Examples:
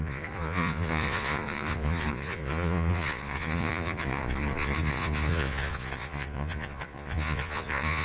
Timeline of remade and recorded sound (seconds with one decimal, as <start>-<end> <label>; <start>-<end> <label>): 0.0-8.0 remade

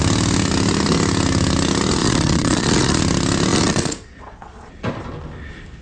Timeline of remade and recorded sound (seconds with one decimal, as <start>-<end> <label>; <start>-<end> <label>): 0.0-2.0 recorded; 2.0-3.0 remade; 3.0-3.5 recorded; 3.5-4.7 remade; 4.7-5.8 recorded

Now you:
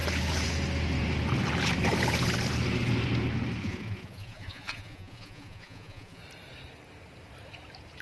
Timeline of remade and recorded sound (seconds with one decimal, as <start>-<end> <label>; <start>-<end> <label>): 0.0-3.6 recorded; 3.6-6.2 remade; 6.2-8.0 recorded

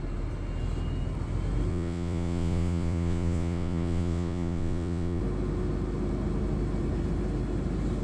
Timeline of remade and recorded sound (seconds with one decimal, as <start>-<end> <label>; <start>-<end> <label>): 0.0-1.7 recorded; 1.7-5.2 remade; 5.2-8.0 recorded

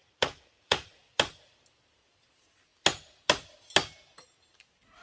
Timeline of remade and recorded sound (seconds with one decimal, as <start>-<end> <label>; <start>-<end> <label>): 0.0-1.0 remade; 1.0-5.0 recorded